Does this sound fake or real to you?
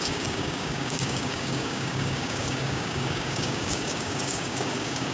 fake